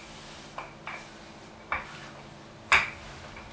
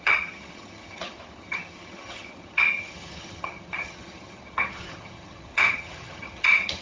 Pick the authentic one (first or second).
first